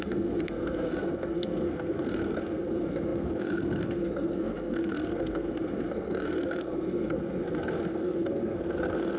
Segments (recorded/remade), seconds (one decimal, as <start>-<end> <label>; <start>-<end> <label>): 0.0-9.2 remade